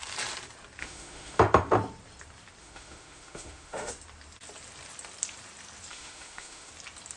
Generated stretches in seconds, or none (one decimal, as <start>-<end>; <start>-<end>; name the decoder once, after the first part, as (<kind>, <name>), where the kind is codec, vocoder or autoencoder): 0.8-1.4 (autoencoder, DAC-VAE); 2.6-3.9; 5.9-6.7